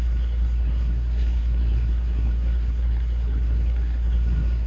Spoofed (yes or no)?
yes